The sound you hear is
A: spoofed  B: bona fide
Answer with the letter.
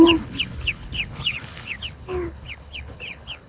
A